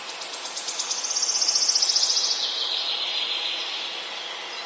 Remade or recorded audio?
recorded